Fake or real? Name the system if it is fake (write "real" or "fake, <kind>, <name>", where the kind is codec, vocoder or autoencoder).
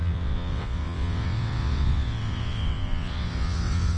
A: fake, vocoder, WaveNeXt